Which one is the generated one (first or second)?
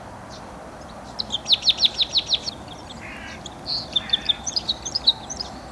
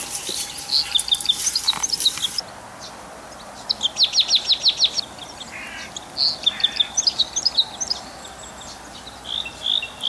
first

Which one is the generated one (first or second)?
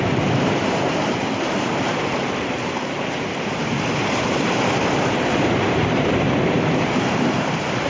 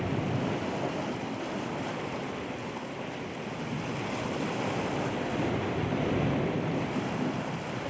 first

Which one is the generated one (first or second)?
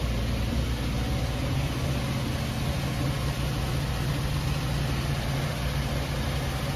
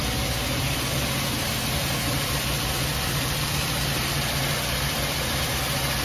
second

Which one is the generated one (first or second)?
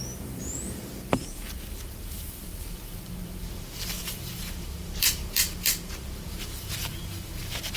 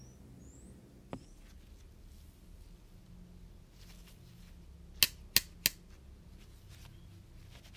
first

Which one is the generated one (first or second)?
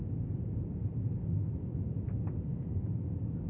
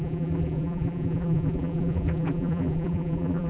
second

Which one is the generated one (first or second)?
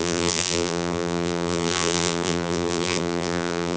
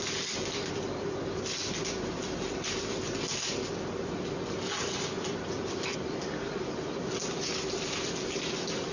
first